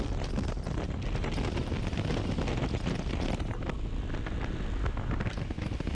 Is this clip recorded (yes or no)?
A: yes